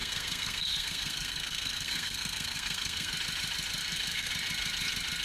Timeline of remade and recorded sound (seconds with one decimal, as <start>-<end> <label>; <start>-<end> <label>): 0.0-3.1 remade; 3.1-3.8 recorded; 3.8-4.3 remade; 4.3-5.2 recorded